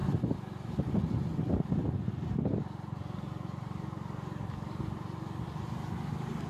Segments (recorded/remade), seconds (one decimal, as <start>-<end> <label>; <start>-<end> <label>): 0.0-6.5 recorded